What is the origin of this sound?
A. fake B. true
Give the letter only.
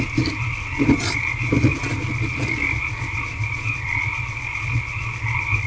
B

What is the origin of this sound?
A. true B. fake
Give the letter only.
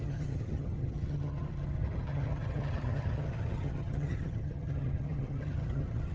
B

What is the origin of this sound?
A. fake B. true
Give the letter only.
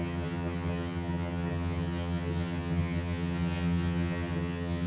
A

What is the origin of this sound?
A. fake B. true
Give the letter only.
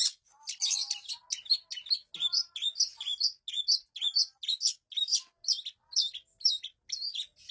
B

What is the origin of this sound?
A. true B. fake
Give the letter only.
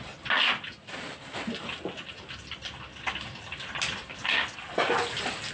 A